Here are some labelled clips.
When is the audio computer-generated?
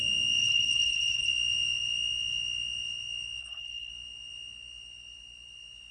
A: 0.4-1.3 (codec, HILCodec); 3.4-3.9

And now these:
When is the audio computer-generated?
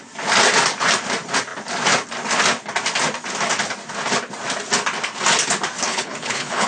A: 5.9-6.7 (codec, HILCodec)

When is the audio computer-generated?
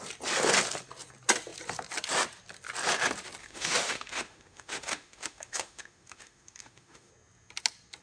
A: 3.4-7.1 (autoencoder, DAC-VAE)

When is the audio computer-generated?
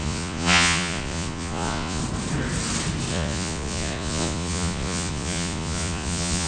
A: 0.0-2.0 (vocoder, Vocos); 3.1-6.5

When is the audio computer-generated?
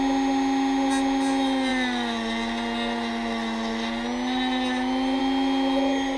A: none